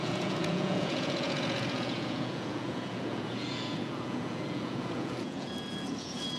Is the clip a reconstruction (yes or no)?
yes